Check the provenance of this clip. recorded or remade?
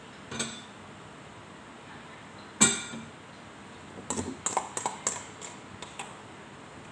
recorded